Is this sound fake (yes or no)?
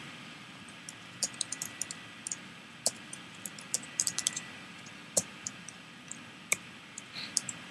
yes